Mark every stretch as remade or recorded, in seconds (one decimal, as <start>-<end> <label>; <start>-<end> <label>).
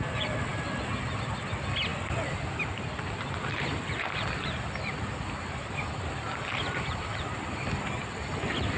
0.0-8.8 recorded